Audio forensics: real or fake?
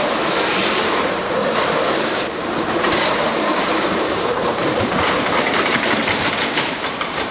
fake